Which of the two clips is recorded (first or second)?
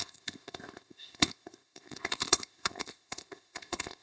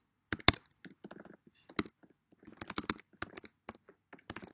second